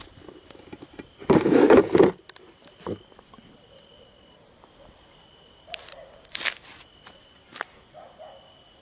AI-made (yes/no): no